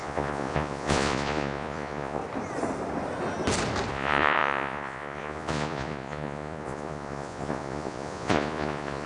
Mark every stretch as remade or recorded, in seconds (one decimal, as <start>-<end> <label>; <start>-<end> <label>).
0.0-2.2 remade; 2.2-3.9 recorded; 3.9-9.1 remade